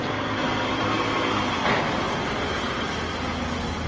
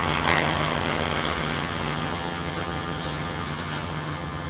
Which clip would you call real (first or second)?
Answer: first